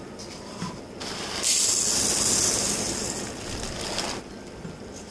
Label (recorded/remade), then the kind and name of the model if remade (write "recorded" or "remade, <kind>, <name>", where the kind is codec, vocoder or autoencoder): recorded